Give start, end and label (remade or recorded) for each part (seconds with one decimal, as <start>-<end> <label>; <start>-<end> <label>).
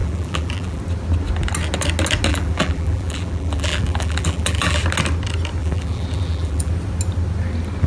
0.0-0.8 remade; 0.8-2.3 recorded; 2.3-4.8 remade; 4.8-5.6 recorded; 5.6-6.7 remade; 6.7-7.9 recorded